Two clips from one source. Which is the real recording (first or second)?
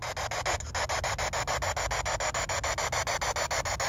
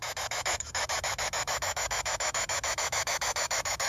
first